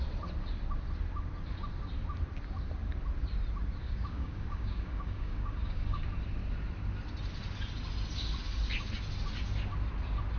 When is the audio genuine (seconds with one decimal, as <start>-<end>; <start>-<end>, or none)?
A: 0.0-3.8; 6.0-10.4